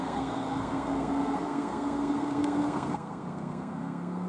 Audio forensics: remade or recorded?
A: remade